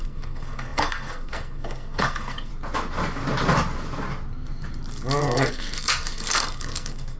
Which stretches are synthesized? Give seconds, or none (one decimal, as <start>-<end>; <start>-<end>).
0.0-2.5; 5.2-7.2